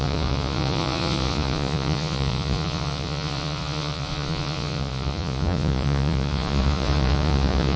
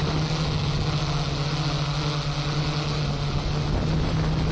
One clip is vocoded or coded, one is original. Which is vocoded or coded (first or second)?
first